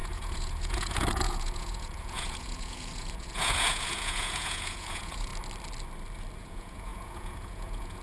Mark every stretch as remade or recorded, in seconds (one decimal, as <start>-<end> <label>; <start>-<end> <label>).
0.0-5.3 remade; 5.3-6.4 recorded; 6.4-8.0 remade